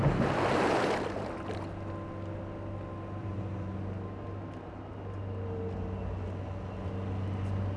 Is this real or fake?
real